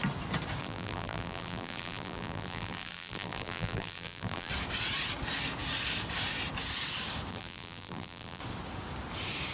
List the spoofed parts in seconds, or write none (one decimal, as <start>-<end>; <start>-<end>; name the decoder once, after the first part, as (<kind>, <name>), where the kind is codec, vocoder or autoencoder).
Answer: 0.6-4.5 (vocoder, BigVGAN v2); 7.3-8.4